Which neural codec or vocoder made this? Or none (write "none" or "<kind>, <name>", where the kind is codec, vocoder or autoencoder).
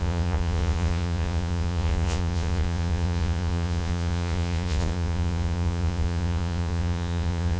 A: vocoder, Vocos